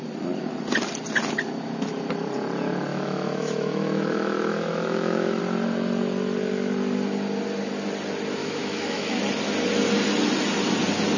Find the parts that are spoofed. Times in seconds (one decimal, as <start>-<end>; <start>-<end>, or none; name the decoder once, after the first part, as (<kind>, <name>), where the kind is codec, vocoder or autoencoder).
2.9-5.4 (autoencoder, DAC-VAE); 8.4-9.2